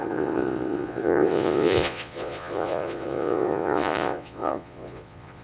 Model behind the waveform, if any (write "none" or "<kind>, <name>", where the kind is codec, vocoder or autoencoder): vocoder, Vocos